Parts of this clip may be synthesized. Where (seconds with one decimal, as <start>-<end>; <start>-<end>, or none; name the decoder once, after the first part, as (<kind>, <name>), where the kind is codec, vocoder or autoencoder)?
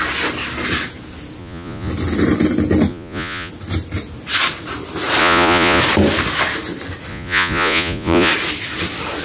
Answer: 1.4-1.9 (vocoder, Vocos); 2.9-3.5; 5.2-5.8; 7.1-8.3